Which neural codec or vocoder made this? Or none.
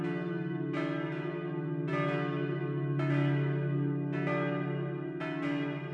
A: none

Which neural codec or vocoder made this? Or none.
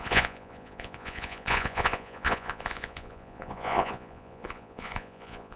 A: vocoder, Vocos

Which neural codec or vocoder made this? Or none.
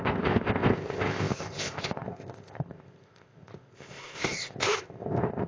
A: codec, ZipCodec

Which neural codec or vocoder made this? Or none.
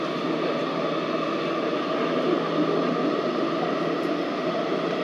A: none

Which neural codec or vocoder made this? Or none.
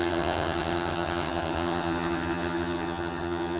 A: vocoder, HiFi-GAN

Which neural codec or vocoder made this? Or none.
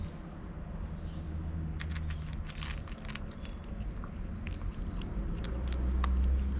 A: none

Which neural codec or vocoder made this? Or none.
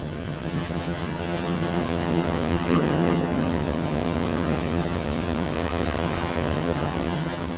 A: vocoder, HiFi-GAN